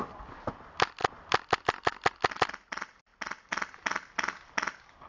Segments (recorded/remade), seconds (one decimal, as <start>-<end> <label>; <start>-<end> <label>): 0.0-5.1 recorded

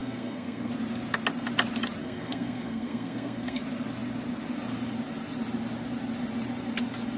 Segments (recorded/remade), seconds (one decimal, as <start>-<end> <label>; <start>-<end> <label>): 0.0-0.7 remade; 0.7-2.0 recorded; 2.0-3.6 remade; 3.6-7.2 recorded

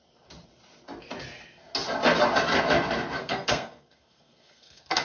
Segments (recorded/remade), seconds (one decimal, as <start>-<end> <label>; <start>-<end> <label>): 0.0-3.2 recorded; 3.2-5.0 remade

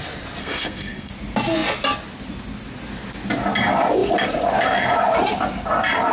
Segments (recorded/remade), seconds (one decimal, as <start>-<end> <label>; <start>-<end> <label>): 0.0-0.4 recorded; 0.4-1.1 remade; 1.1-6.1 recorded

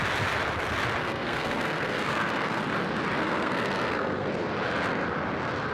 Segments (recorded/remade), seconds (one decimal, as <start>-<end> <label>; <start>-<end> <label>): 0.0-1.0 recorded; 1.0-2.6 remade; 2.6-3.2 recorded; 3.2-4.3 remade; 4.3-5.7 recorded